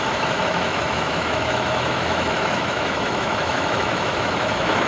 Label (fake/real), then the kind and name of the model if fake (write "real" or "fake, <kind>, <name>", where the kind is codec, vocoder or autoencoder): fake, autoencoder, DAC-VAE